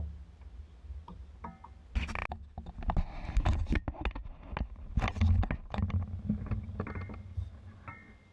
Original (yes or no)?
yes